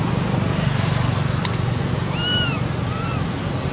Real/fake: real